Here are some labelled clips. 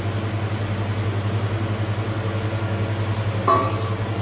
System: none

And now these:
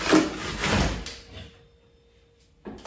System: none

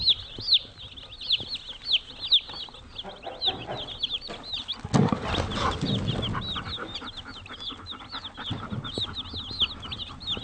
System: none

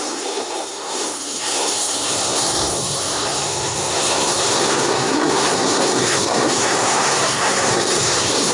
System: codec, SNAC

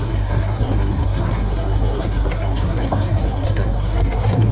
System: codec, SNAC